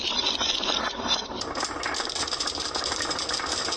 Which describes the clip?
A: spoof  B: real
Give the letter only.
A